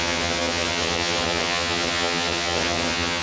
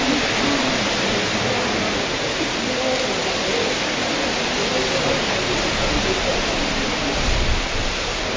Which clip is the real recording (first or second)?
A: second